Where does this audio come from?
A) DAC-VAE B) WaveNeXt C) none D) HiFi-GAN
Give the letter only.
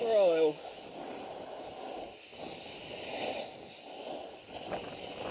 C